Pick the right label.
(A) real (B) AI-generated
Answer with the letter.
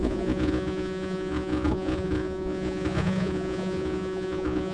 B